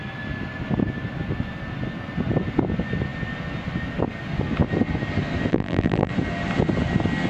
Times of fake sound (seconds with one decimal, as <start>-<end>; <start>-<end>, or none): 5.5-6.1

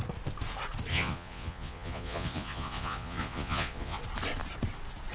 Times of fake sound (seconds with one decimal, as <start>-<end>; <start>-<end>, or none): 0.9-4.0